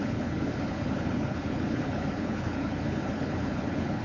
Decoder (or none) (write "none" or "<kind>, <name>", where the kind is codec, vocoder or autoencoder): codec, HILCodec